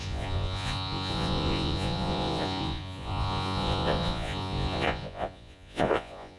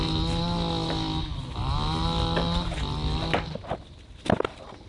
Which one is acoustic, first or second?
second